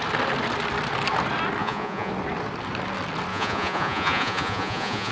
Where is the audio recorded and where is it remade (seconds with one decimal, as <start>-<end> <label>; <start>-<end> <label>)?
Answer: 0.0-1.6 recorded; 1.6-2.1 remade; 2.1-3.3 recorded; 3.3-5.1 remade